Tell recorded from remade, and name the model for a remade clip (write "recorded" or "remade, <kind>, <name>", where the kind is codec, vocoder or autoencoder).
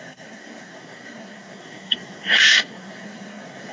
remade, codec, SNAC